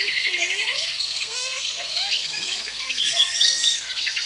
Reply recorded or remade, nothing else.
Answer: remade